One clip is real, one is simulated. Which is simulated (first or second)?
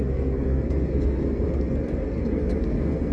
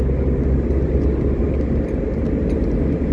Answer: first